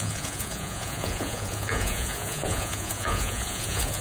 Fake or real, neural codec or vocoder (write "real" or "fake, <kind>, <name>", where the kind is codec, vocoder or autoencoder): fake, vocoder, Vocos